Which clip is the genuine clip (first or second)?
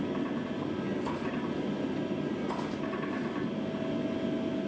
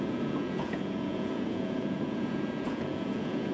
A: first